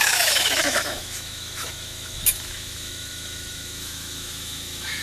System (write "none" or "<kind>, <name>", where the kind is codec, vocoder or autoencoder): autoencoder, DAC-VAE